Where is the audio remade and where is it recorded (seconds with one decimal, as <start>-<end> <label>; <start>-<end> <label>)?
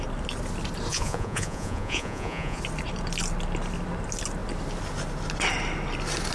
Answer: 0.0-0.9 recorded; 0.9-2.6 remade; 2.6-6.3 recorded